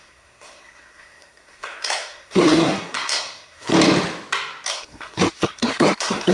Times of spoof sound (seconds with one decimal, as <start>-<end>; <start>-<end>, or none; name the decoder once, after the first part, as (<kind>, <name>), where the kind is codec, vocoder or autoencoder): 0.0-3.7 (codec, SNAC); 4.7-6.3